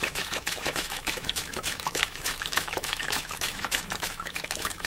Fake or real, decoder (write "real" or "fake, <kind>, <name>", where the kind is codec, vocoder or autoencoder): fake, autoencoder, DAC-VAE